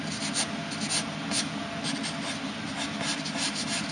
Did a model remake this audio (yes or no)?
no